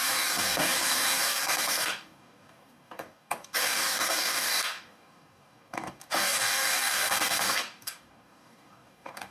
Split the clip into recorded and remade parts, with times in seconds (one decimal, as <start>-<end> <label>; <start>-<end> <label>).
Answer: 0.0-9.3 remade